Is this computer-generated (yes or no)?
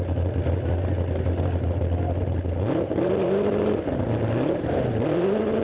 no